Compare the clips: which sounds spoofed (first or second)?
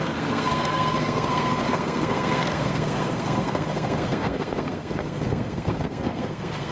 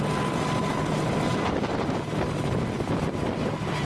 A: first